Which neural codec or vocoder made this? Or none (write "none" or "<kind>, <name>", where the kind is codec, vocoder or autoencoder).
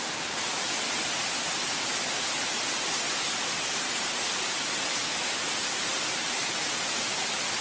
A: none